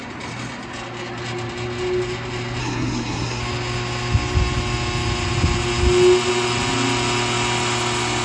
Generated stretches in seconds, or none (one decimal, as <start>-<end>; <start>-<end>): 2.6-3.4